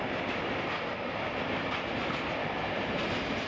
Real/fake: real